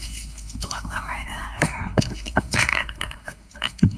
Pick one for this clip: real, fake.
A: fake